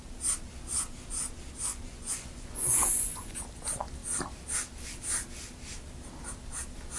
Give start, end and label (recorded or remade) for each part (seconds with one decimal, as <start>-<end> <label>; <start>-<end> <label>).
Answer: 0.0-1.7 recorded; 1.7-3.4 remade; 3.4-7.0 recorded

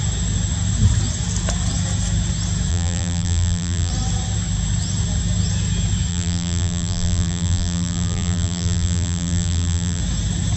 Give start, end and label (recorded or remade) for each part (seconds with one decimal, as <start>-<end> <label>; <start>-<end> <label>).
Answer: 0.0-2.7 recorded; 2.7-3.9 remade; 3.9-6.1 recorded; 6.1-10.0 remade; 10.0-10.6 recorded

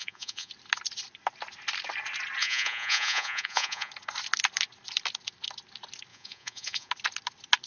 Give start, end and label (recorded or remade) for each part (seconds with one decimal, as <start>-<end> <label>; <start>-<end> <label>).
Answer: 0.0-0.5 remade; 0.5-2.4 recorded; 2.4-3.9 remade; 3.9-6.1 recorded; 6.1-6.9 remade; 6.9-7.7 recorded

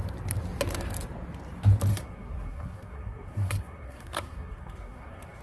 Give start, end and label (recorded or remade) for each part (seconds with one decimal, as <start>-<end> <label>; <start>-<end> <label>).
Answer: 0.0-1.9 recorded; 1.9-5.4 remade